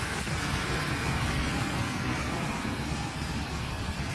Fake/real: fake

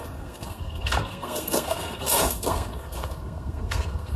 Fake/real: fake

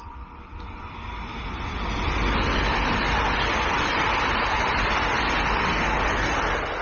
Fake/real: real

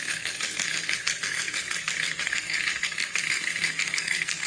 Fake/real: fake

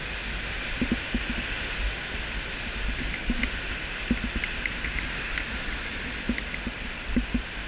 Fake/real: real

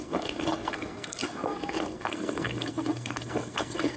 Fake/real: fake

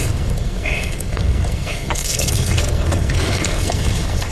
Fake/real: fake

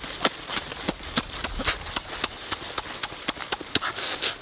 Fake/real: real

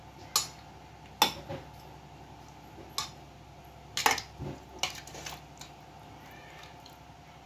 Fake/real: real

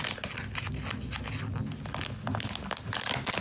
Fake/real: real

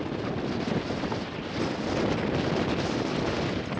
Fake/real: real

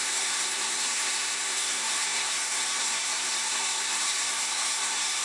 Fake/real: fake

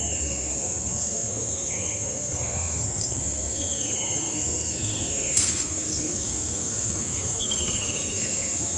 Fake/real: fake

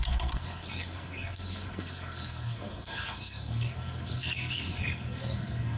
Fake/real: fake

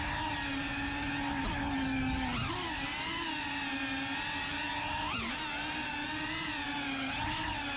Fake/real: real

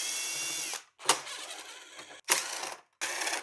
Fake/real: real